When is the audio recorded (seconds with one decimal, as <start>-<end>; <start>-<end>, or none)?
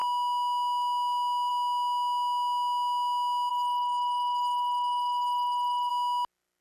0.0-3.5; 5.9-6.6